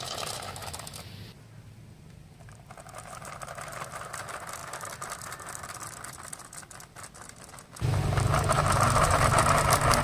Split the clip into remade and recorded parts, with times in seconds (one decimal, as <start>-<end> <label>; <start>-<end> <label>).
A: 0.0-10.0 recorded